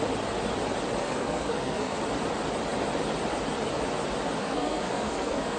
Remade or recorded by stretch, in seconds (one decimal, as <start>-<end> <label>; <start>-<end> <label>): 0.0-1.0 recorded; 1.0-2.0 remade; 2.0-4.4 recorded; 4.4-5.6 remade